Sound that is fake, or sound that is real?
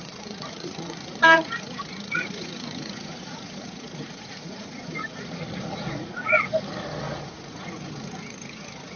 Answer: fake